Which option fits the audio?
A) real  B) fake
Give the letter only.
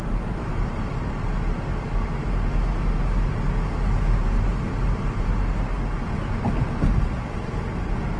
A